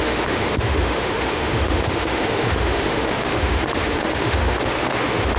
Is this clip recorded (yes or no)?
no